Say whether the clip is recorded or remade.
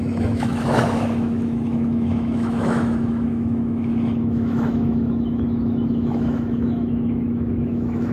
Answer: remade